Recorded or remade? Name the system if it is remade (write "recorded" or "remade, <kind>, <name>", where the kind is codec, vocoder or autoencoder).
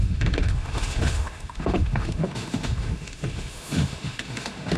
remade, autoencoder, DAC-VAE